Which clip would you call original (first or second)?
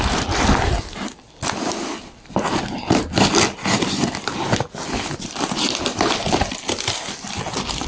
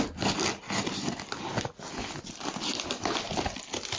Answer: second